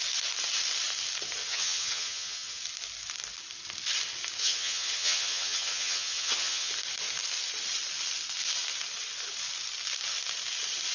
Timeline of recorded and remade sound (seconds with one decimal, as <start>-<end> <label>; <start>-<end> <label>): 0.0-1.4 recorded; 1.4-2.6 remade; 2.6-4.4 recorded; 4.4-6.7 remade; 6.7-10.9 recorded